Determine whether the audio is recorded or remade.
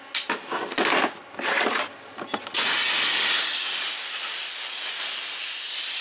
recorded